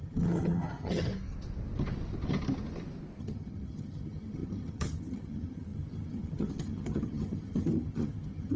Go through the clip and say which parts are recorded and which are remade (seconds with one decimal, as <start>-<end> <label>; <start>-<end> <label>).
0.0-1.1 remade; 1.1-3.2 recorded; 3.2-8.6 remade